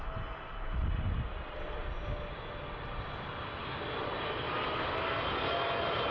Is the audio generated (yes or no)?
no